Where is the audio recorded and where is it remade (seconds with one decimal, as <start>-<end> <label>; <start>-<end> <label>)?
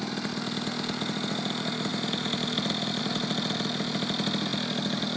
0.0-5.2 recorded